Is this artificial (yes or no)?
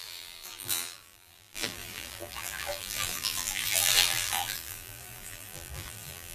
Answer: yes